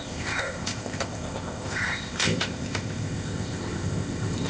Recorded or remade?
remade